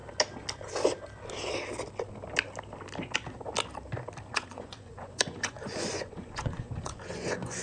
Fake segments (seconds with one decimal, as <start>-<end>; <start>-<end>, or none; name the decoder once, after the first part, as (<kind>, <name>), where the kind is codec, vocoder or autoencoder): 4.3-7.6 (vocoder, Vocos)